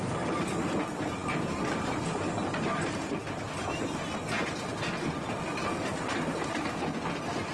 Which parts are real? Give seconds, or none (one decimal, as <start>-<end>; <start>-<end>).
0.0-5.6; 6.8-7.5